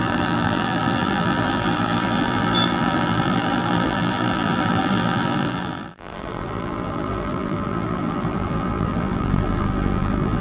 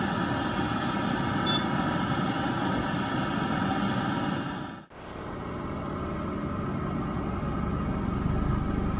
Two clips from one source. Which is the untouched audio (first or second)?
second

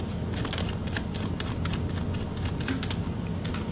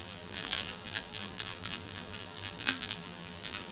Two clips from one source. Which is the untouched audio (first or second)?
first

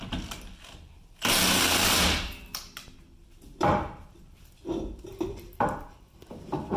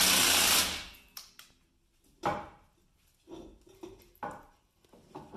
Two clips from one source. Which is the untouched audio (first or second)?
second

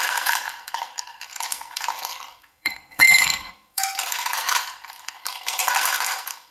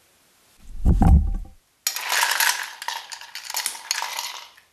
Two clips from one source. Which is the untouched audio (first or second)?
second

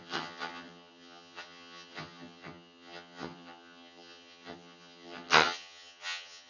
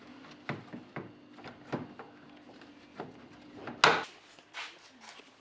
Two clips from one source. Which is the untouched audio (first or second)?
second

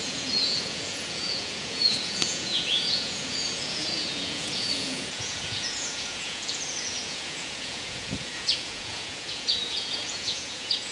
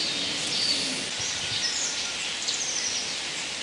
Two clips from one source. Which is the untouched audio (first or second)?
second